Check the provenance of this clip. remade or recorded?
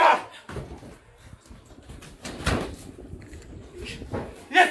recorded